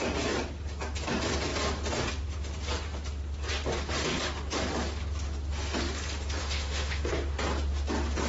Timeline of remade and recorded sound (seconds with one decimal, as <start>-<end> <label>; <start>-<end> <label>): 0.0-6.4 recorded; 6.4-7.1 remade; 7.1-8.3 recorded